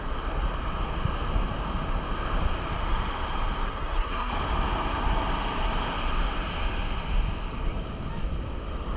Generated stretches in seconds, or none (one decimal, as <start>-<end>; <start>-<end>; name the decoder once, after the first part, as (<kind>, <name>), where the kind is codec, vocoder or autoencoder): 3.7-4.3 (codec, SNAC)